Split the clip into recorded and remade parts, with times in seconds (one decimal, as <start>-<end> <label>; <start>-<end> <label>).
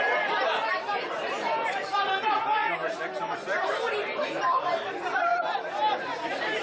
0.0-2.6 remade; 2.6-3.2 recorded; 3.2-5.3 remade; 5.3-6.0 recorded; 6.0-6.6 remade